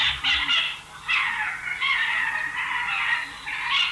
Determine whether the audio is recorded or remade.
recorded